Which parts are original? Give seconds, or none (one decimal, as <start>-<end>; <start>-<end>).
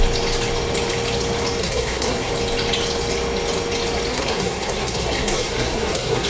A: 0.0-1.6; 2.3-4.1